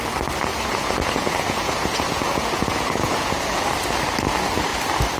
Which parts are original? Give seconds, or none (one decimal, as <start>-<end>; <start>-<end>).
0.0-0.5; 3.6-5.2